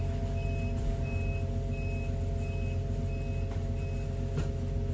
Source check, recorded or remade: recorded